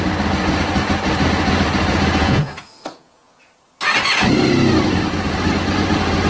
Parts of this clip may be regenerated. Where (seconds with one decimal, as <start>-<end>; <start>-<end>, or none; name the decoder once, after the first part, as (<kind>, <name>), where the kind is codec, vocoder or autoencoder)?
2.2-3.4 (vocoder, Vocos)